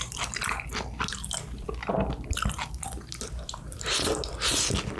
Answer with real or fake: real